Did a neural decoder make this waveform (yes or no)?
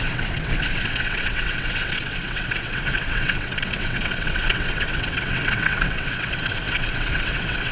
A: yes